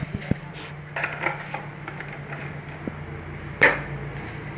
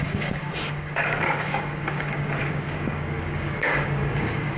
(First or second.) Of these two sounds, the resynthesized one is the second